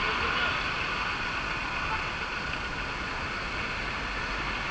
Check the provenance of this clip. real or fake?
real